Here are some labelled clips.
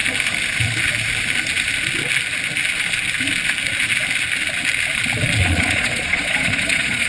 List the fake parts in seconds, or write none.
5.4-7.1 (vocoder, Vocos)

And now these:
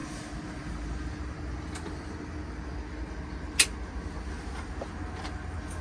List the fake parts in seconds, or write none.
none

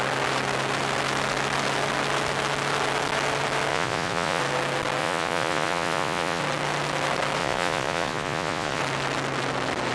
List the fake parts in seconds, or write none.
3.7-4.4 (vocoder, Vocos); 5.0-6.4; 7.4-8.8

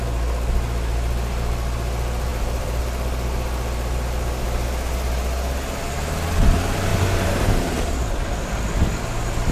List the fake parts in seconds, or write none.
2.3-2.8 (vocoder, BigVGAN v2); 6.9-8.5

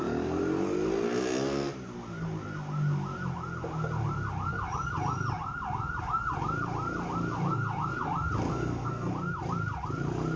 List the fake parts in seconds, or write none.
8.5-9.1 (codec, SNAC)

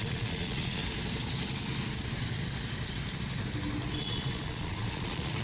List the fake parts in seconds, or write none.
0.0-0.8 (vocoder, Vocos); 4.0-5.4